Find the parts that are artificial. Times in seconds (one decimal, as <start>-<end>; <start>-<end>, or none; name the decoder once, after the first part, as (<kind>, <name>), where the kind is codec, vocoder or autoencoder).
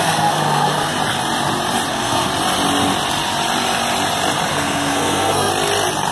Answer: 0.0-0.9 (codec, SNAC); 1.9-2.3; 4.5-5.5